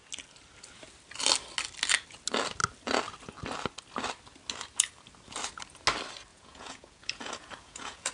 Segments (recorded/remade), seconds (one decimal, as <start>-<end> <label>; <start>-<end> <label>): 0.0-6.3 recorded; 6.3-8.1 remade